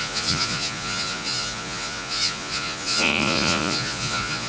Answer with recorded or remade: remade